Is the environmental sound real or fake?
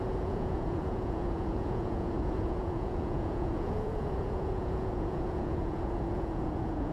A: fake